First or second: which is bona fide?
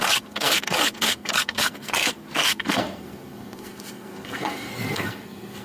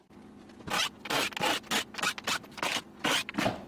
second